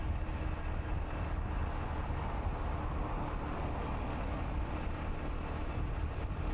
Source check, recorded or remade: recorded